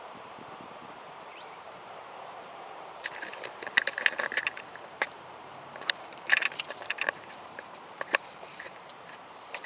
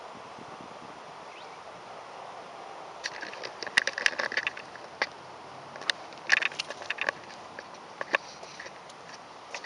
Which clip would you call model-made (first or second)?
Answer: first